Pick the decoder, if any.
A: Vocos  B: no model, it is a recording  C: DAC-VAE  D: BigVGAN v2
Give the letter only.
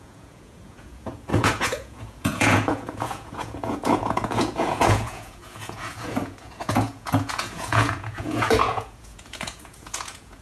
A